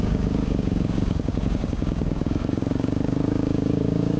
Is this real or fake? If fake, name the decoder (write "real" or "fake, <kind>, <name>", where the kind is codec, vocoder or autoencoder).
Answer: fake, codec, DAC